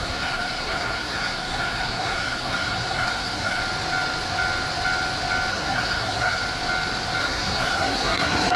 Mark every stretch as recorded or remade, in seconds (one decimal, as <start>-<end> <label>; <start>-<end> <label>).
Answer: 0.0-3.6 remade; 3.6-5.5 recorded; 5.5-6.4 remade; 6.4-7.2 recorded; 7.2-8.6 remade